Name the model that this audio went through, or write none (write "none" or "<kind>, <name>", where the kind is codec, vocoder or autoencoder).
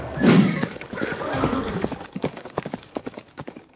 codec, DAC